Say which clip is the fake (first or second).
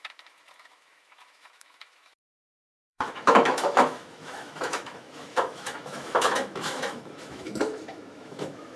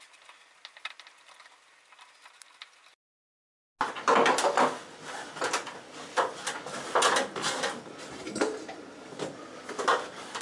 first